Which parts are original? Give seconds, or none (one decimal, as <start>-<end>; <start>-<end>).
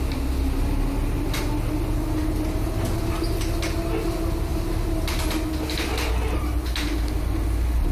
0.0-7.9